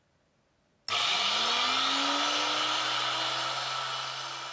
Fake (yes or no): no